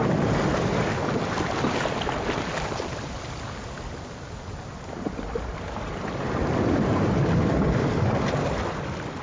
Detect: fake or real real